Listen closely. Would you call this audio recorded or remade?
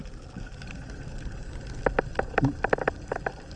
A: recorded